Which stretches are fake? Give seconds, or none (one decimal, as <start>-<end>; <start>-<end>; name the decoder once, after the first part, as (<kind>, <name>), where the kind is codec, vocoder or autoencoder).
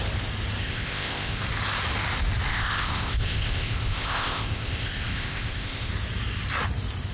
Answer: 0.6-1.4 (codec, ZipCodec); 2.5-5.9